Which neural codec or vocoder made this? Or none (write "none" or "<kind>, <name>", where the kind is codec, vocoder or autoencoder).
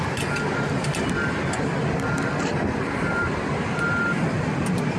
vocoder, BigVGAN v2